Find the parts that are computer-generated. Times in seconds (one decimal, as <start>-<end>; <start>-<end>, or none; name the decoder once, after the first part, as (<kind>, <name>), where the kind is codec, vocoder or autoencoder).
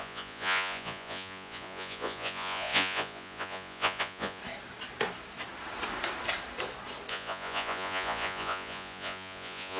0.0-4.4 (vocoder, Vocos); 7.1-9.8